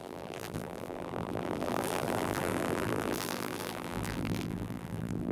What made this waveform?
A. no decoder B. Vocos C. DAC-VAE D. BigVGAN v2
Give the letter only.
D